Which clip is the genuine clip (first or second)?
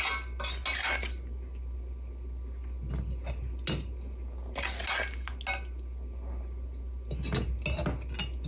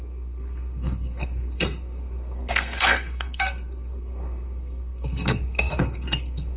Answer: first